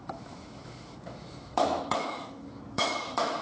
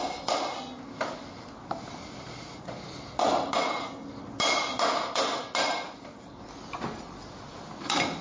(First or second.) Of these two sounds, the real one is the second